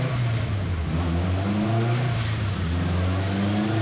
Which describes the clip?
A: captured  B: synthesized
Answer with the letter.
A